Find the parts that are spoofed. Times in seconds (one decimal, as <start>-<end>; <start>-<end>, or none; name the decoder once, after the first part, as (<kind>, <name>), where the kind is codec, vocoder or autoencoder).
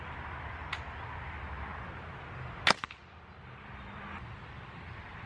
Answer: none